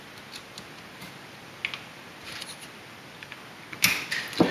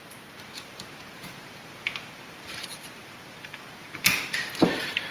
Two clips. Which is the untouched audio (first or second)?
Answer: first